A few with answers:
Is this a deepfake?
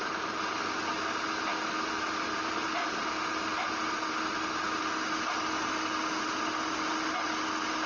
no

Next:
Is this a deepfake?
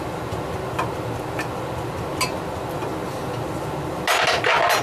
no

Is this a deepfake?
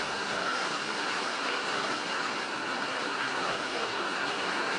yes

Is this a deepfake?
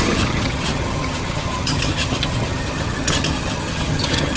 yes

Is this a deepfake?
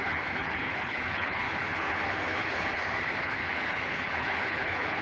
yes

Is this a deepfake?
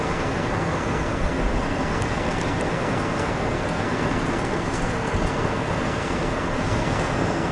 yes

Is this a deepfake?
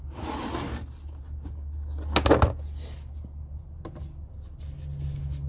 no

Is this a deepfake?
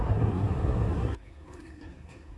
yes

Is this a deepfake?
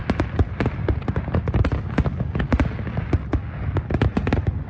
no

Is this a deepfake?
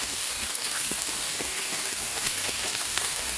yes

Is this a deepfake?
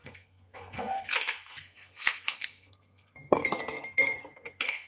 yes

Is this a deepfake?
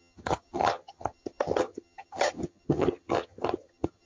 yes